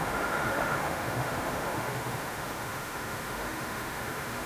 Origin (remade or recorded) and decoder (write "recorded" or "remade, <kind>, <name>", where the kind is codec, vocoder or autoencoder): remade, autoencoder, DAC-VAE